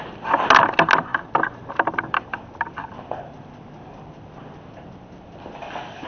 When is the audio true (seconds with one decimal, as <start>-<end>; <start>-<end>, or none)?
0.0-6.1